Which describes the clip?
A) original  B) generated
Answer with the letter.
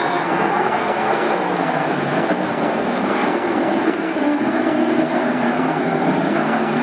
B